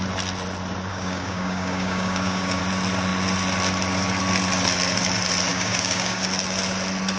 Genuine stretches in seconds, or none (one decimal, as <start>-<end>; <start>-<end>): 0.0-0.9; 2.6-5.5; 6.2-7.2